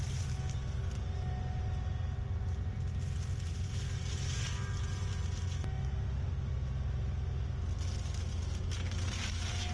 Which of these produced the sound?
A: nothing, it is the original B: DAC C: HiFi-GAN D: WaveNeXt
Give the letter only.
A